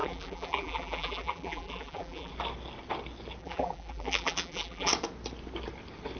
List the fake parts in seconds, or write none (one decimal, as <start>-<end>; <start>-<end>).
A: 0.0-2.3; 3.4-4.9